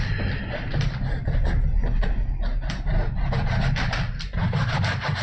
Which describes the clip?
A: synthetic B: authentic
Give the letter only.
B